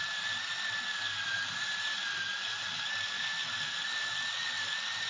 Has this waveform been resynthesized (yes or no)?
no